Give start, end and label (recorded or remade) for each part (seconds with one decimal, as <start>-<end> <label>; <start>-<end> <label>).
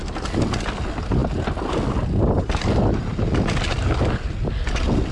0.0-5.1 recorded